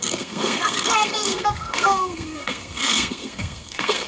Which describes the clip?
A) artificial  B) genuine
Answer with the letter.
A